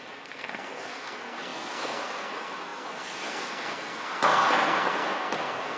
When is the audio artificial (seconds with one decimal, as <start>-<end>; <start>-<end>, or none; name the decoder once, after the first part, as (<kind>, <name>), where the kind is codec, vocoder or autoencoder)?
0.0-5.8 (codec, SNAC)